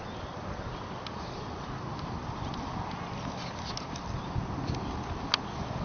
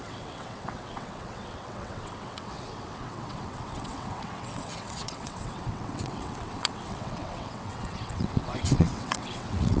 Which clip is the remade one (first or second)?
second